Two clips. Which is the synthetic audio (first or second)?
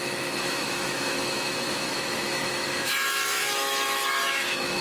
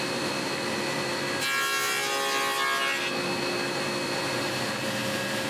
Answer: first